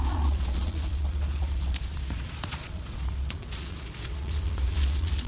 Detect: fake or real fake